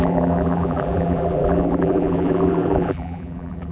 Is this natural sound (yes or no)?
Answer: no